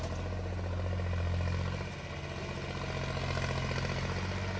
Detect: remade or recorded recorded